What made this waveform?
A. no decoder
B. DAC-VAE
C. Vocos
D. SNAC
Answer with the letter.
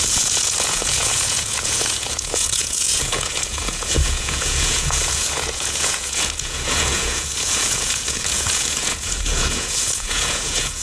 C